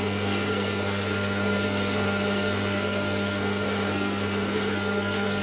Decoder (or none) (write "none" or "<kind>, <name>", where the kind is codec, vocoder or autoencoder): codec, SNAC